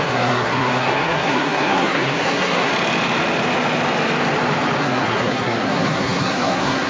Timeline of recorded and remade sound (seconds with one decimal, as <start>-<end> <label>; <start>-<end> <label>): 0.0-2.7 remade; 2.7-4.8 recorded; 4.8-6.9 remade